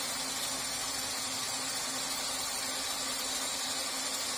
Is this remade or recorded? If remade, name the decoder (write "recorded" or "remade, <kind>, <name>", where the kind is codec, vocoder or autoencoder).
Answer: recorded